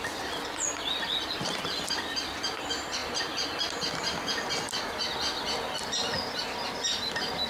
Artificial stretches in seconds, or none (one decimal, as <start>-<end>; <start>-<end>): none